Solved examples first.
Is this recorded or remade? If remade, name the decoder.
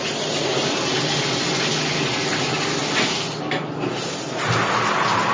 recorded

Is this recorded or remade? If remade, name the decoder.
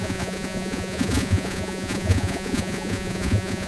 remade, vocoder, Vocos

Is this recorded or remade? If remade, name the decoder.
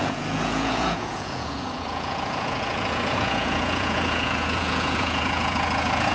remade, vocoder, Vocos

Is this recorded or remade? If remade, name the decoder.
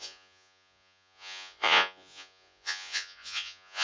remade, vocoder, Vocos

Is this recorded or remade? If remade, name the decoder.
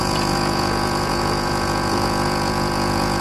remade, vocoder, Vocos